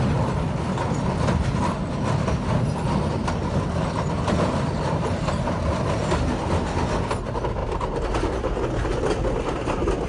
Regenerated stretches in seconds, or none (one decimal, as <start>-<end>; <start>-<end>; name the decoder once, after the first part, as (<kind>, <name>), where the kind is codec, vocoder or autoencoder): none